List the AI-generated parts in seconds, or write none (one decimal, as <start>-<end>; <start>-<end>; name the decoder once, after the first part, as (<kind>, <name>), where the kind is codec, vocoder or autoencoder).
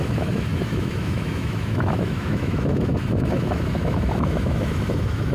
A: 0.0-5.3 (autoencoder, DAC-VAE)